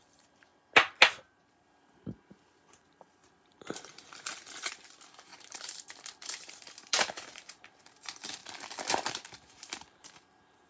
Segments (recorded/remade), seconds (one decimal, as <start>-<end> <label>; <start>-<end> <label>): 0.0-0.5 remade; 0.5-1.5 recorded; 1.5-3.9 remade; 3.9-4.5 recorded; 4.5-8.4 remade; 8.4-8.9 recorded; 8.9-10.7 remade